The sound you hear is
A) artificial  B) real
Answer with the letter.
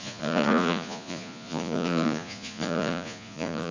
A